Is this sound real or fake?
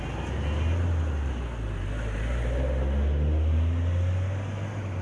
real